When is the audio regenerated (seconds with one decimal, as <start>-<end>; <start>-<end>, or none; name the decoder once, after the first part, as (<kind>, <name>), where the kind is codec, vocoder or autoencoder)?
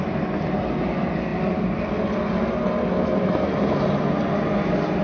none